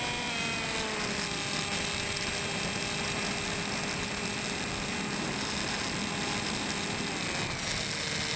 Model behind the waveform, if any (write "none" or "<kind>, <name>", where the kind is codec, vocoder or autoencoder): none